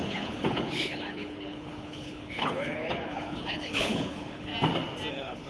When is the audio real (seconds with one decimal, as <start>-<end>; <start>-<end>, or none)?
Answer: 4.5-5.1